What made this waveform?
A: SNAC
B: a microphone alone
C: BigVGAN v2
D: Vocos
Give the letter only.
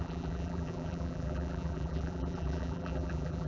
C